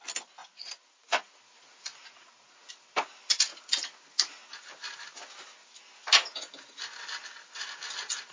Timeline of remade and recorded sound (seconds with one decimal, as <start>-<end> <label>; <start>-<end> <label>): 0.0-0.4 recorded; 0.4-2.7 remade; 2.7-8.3 recorded